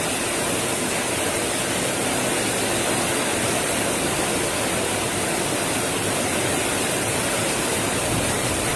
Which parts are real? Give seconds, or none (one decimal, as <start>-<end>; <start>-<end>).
0.0-3.3; 6.9-8.8